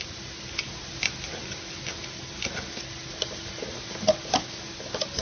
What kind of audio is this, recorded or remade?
recorded